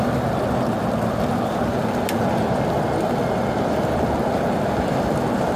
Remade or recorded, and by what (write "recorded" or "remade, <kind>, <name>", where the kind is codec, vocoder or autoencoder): recorded